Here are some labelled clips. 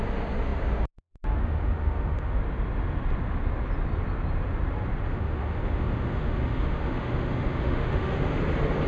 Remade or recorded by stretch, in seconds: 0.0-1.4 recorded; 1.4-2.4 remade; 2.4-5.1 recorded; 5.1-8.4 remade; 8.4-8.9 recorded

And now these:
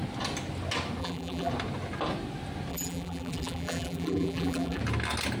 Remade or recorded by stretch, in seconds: 0.0-1.0 recorded; 1.0-1.5 remade; 1.5-2.7 recorded; 2.7-4.8 remade; 4.8-5.4 recorded

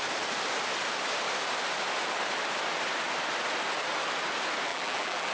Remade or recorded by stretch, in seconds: 0.0-4.7 recorded; 4.7-5.3 remade

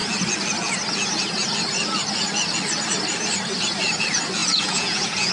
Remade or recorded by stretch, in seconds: 0.0-4.4 recorded; 4.4-5.3 remade